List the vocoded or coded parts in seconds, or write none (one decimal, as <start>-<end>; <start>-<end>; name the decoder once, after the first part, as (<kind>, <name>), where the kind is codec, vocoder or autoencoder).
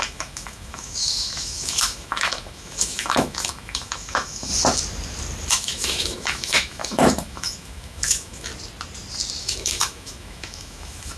0.0-4.5 (autoencoder, DAC-VAE); 5.5-8.5; 9.4-11.2